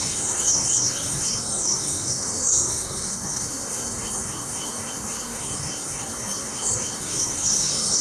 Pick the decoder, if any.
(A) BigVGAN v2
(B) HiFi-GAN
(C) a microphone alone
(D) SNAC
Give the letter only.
D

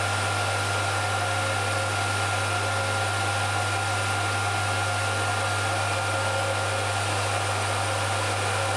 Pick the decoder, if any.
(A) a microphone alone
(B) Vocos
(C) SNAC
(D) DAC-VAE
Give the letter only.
A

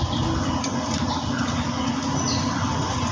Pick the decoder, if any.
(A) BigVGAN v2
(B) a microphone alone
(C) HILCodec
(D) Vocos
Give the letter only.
A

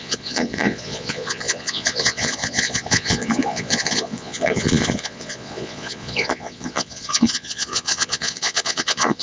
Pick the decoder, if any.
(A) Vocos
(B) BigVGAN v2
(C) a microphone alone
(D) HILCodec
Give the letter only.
A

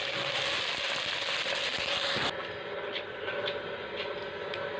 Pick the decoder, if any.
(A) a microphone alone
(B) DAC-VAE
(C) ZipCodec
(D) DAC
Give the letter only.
A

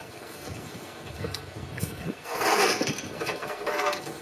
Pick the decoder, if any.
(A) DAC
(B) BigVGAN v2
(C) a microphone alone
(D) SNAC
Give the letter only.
D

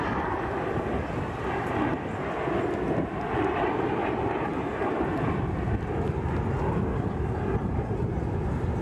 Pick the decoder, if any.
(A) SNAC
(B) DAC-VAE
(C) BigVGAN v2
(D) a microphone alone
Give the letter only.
D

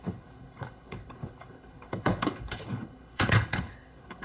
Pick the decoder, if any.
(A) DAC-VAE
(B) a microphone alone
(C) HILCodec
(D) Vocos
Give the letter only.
C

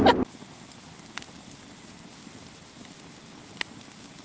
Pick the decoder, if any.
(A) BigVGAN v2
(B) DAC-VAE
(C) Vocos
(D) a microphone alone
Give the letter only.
D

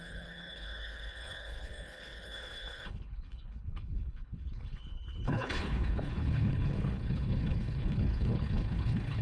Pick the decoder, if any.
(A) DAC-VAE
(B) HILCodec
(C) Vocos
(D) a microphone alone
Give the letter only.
B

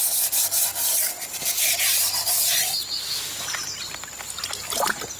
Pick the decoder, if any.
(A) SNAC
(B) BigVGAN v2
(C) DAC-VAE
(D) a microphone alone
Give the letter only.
D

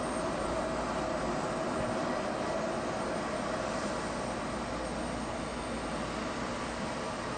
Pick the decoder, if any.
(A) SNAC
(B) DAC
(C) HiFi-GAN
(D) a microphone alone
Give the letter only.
D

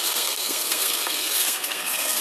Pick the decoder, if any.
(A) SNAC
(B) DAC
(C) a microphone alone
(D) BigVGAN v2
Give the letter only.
A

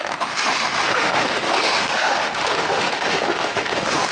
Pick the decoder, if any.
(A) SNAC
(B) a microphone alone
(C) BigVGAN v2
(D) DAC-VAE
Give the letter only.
D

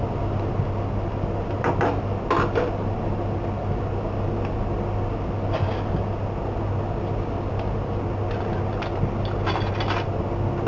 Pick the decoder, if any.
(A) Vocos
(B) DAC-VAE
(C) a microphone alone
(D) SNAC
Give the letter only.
C